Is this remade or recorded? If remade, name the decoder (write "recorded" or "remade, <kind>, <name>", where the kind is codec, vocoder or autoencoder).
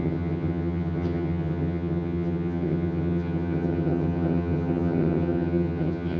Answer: remade, vocoder, HiFi-GAN